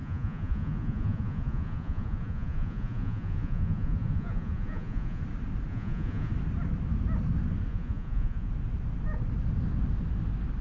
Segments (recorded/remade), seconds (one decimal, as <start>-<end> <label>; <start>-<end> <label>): 0.0-5.2 remade; 5.2-5.7 recorded; 5.7-6.3 remade; 6.3-7.7 recorded; 7.7-8.5 remade; 8.5-10.6 recorded